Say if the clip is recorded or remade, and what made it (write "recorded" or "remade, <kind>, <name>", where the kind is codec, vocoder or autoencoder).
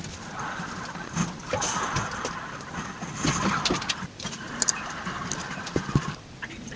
recorded